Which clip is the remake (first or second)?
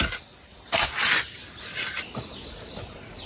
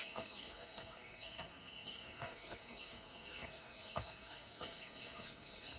second